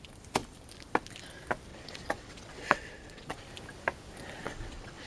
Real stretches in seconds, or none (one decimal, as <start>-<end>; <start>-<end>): 0.0-1.7; 3.4-4.4